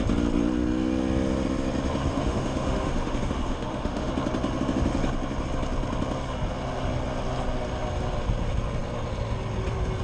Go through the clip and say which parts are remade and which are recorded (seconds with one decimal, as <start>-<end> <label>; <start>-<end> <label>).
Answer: 0.0-2.1 recorded; 2.1-4.1 remade; 4.1-10.0 recorded